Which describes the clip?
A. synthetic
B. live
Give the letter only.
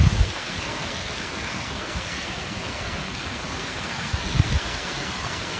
A